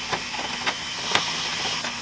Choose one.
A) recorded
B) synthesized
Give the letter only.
A